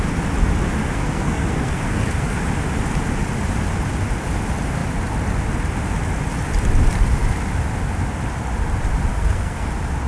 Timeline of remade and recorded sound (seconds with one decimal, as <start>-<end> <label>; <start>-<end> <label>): 0.0-0.8 recorded; 0.8-2.4 remade; 2.4-9.1 recorded; 9.1-9.7 remade; 9.7-10.1 recorded